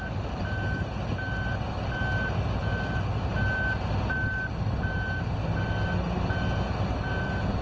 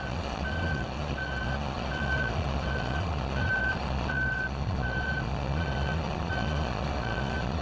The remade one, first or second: second